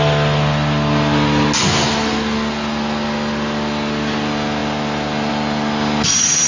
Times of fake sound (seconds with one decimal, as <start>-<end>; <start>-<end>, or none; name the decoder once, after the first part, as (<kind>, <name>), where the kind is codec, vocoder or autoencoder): none